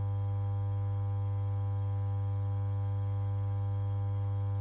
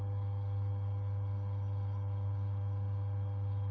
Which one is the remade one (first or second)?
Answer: second